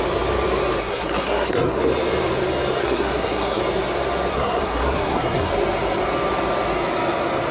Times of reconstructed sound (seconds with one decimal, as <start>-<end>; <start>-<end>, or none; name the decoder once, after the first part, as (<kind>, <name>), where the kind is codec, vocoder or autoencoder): 0.8-1.8 (codec, SNAC); 2.8-3.6; 4.3-5.5